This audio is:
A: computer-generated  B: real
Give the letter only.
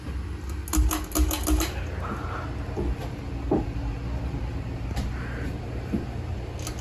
B